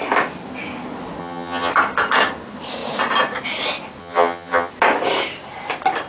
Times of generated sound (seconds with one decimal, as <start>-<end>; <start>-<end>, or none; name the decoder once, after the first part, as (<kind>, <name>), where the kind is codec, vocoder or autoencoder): 1.2-1.7 (vocoder, HiFi-GAN); 4.0-4.7